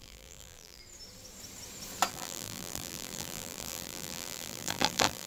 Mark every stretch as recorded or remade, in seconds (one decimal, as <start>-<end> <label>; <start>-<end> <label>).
0.0-0.8 remade; 0.8-2.1 recorded; 2.1-5.3 remade